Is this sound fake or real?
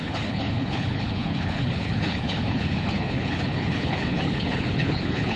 fake